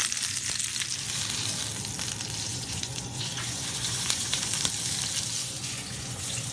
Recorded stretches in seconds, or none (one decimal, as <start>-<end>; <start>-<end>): 0.0-2.5; 4.5-5.4